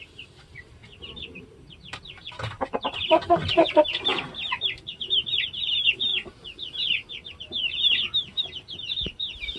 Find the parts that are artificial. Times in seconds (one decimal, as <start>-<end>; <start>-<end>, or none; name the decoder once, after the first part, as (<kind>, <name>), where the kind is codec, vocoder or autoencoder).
0.0-6.1 (vocoder, BigVGAN v2); 7.1-9.6